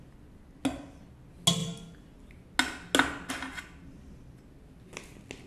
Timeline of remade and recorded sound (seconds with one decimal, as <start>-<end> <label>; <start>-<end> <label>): 0.0-5.5 recorded